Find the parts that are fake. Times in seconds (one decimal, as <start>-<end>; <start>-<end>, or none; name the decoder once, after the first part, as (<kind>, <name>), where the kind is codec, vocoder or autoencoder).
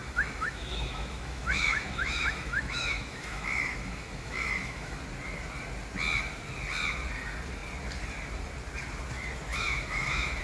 0.0-5.0 (autoencoder, DAC-VAE); 9.5-10.4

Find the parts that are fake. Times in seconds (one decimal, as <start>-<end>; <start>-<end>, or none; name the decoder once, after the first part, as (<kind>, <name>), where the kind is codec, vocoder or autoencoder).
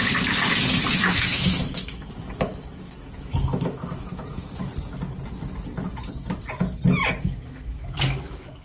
0.9-4.7 (autoencoder, DAC-VAE); 7.2-8.6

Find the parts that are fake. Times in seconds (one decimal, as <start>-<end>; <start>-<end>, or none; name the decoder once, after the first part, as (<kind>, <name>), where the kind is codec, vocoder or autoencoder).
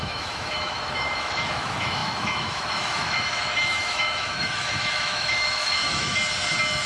0.0-6.2 (autoencoder, DAC-VAE)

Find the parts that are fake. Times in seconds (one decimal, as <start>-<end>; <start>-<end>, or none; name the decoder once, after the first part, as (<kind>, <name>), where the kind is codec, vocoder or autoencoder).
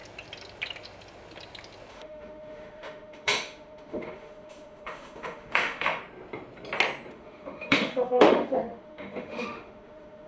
1.9-6.0 (autoencoder, DAC-VAE); 7.1-10.3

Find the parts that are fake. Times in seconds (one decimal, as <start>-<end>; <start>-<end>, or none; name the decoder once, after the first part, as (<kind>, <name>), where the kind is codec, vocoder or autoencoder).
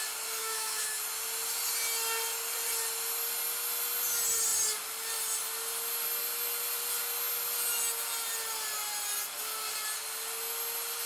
0.4-1.0 (autoencoder, DAC-VAE)